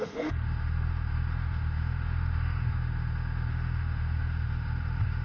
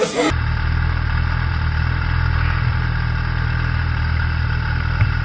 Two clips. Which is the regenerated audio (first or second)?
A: first